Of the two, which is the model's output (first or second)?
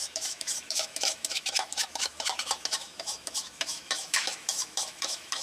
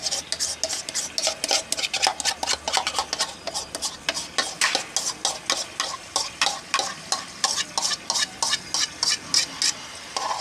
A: first